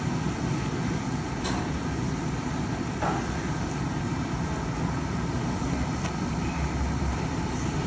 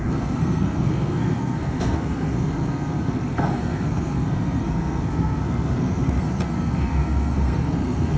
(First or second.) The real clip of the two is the first